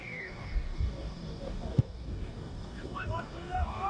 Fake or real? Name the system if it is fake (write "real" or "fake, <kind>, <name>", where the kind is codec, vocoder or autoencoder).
fake, codec, DAC